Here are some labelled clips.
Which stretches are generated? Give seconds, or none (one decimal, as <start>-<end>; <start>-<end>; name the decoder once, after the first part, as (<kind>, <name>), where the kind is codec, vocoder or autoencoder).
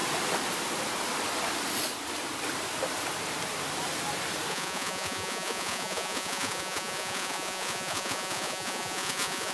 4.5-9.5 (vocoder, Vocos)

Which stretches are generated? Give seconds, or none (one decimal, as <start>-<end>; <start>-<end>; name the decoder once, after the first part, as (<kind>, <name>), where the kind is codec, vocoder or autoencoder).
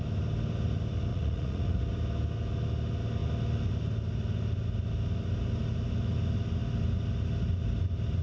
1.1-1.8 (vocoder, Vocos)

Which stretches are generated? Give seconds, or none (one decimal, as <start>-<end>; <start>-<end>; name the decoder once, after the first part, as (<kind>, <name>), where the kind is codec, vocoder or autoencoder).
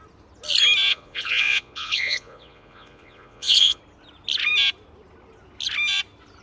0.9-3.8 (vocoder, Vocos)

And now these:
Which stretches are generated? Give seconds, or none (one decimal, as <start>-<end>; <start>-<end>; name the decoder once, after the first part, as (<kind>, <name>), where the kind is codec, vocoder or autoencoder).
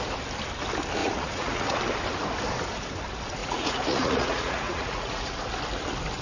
1.0-1.8 (vocoder, Vocos); 3.4-5.4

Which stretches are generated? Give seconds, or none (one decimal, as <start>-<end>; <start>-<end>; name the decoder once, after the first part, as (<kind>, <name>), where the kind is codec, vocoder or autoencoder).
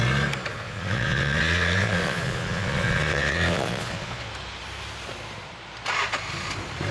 0.5-4.3 (vocoder, Vocos)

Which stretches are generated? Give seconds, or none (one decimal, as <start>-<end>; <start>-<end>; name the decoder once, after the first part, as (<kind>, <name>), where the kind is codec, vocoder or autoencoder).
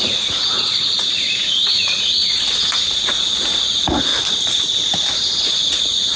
0.0-4.1 (vocoder, Vocos); 5.4-6.2